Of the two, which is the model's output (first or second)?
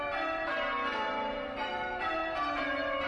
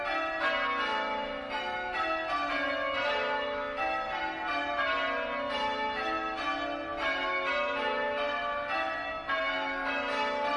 first